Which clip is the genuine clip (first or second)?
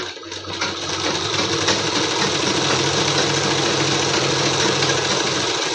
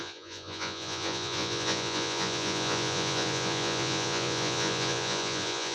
first